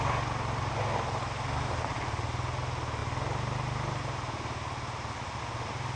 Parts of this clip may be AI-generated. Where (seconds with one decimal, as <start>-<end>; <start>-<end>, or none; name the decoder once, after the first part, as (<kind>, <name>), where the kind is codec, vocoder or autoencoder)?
none